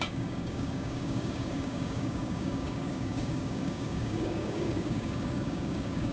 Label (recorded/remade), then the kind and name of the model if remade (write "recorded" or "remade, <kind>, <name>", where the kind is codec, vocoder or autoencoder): remade, codec, DAC